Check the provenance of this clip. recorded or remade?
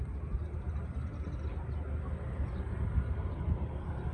recorded